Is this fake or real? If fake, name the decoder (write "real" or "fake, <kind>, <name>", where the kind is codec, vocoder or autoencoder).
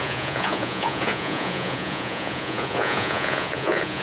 fake, vocoder, Vocos